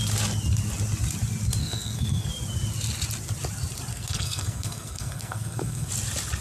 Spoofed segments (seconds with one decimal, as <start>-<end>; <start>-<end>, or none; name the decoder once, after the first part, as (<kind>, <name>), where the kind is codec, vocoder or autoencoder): 1.6-2.3 (codec, SNAC); 3.9-5.9